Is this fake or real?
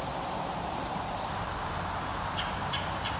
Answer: fake